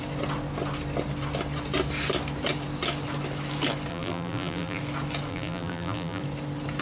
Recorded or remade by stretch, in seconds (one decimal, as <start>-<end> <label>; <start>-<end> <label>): 0.0-3.9 recorded; 3.9-4.8 remade; 4.8-5.3 recorded; 5.3-6.2 remade; 6.2-6.8 recorded